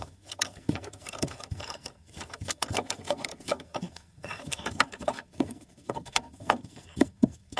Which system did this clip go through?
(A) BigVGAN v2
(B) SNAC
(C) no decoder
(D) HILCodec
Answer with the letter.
B